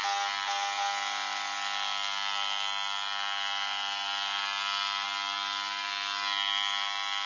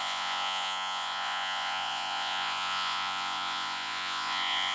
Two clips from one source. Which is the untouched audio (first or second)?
first